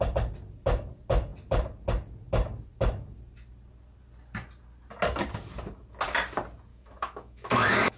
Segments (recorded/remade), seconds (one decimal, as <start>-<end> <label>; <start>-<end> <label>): 0.0-6.7 recorded; 6.7-8.0 remade